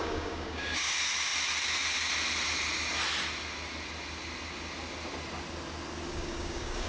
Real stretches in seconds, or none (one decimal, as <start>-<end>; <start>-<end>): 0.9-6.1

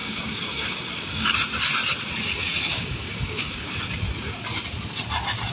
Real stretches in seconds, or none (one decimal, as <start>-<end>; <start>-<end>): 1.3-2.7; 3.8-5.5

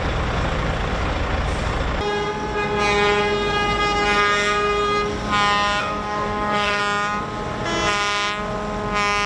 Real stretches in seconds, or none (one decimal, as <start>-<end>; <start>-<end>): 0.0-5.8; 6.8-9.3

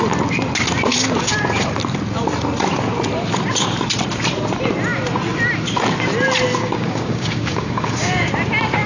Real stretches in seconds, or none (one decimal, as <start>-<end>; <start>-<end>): 0.0-6.6; 8.3-8.9

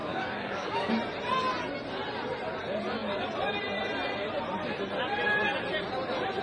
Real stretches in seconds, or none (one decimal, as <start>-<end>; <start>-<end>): 0.9-6.4

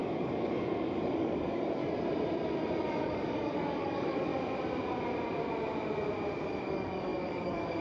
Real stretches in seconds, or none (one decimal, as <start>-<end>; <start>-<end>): 1.8-3.0; 4.3-6.6

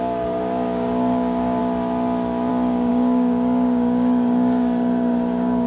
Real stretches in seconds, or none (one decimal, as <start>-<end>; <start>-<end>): 1.6-2.5